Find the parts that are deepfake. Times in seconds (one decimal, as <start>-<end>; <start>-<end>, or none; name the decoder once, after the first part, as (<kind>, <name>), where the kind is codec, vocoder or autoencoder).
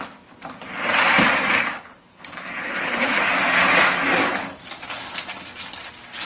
1.9-3.2 (codec, HILCodec)